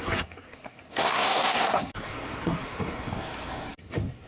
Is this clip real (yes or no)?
no